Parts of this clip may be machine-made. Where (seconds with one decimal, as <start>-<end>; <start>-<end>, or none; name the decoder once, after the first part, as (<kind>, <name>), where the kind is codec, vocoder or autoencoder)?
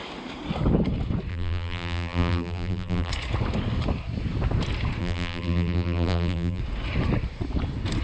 1.3-3.1 (vocoder, BigVGAN v2); 5.0-6.6